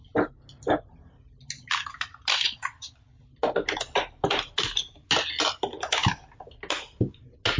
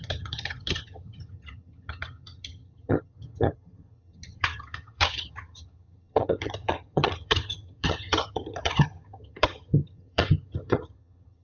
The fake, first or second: second